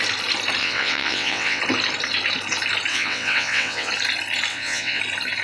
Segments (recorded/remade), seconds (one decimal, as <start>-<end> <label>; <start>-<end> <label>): 0.0-0.6 recorded; 0.6-1.6 remade; 1.6-2.9 recorded; 2.9-3.9 remade; 3.9-4.5 recorded; 4.5-5.0 remade; 5.0-5.4 recorded